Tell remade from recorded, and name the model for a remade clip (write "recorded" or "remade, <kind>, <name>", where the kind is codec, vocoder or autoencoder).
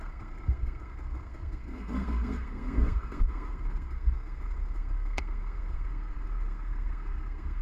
remade, codec, SNAC